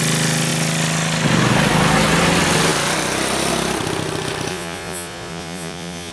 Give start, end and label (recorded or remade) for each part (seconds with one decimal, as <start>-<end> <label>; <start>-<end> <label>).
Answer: 0.0-4.5 recorded; 4.5-6.1 remade